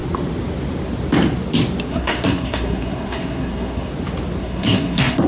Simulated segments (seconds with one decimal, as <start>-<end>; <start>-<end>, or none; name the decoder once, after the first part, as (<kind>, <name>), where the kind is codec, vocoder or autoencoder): 1.9-3.9 (codec, SNAC); 4.4-5.3